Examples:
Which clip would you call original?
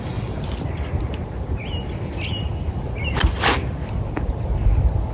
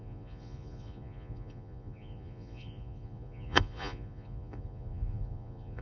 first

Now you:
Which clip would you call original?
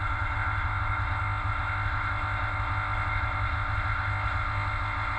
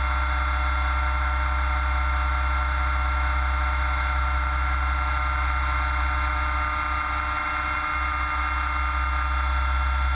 second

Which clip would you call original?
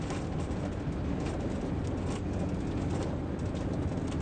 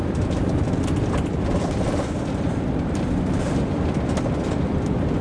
first